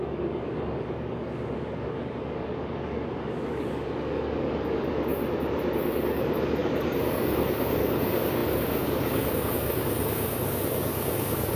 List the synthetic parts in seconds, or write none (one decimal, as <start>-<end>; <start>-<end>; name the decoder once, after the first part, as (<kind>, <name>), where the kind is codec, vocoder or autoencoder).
0.0-5.1 (codec, DAC); 5.8-11.6